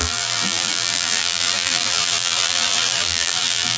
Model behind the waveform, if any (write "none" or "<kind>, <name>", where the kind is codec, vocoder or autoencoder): vocoder, BigVGAN v2